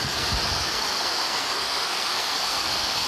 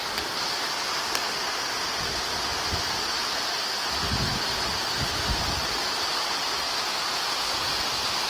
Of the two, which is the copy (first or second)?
first